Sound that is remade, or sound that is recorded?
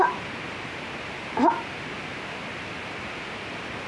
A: recorded